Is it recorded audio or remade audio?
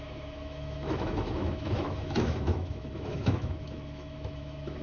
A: remade